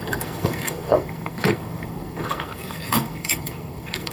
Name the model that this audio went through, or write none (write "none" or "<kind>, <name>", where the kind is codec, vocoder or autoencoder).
codec, SNAC